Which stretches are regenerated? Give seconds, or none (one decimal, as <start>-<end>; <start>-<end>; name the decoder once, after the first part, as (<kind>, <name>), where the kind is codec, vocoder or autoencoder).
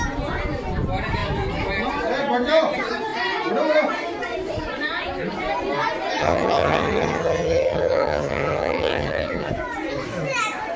6.2-9.5 (vocoder, HiFi-GAN)